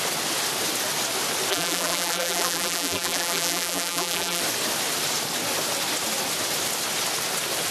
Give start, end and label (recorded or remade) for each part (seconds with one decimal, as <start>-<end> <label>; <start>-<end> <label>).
0.0-1.5 recorded; 1.5-4.4 remade; 4.4-7.7 recorded